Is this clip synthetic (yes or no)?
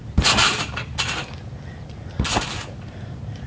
no